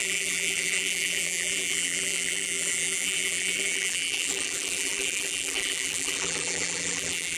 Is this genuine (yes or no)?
no